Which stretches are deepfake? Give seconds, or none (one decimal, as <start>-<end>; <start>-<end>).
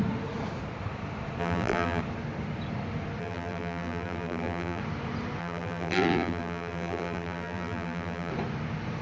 1.4-2.0; 3.2-4.8; 5.4-8.3